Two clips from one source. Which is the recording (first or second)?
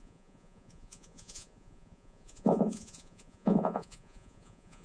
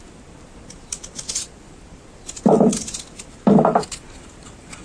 second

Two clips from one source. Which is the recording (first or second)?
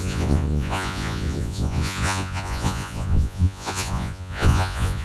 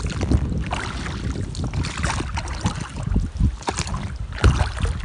second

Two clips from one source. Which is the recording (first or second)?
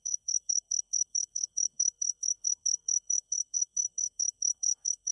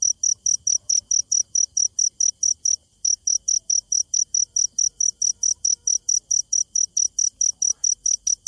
second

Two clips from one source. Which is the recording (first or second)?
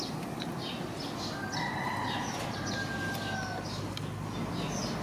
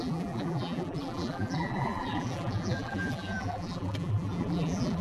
first